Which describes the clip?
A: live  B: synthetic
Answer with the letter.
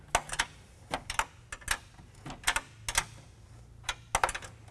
A